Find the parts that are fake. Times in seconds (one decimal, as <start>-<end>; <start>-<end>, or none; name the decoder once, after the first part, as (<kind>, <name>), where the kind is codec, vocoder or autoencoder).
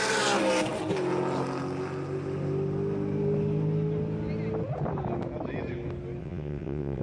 6.2-7.0 (vocoder, WaveNeXt)